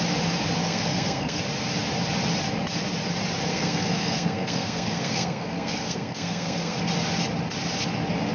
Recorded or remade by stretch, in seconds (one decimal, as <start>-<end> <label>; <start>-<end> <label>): 0.0-0.6 recorded; 0.6-1.4 remade; 1.4-3.5 recorded; 3.5-6.8 remade; 6.8-8.3 recorded